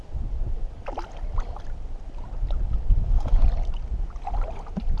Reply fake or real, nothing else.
real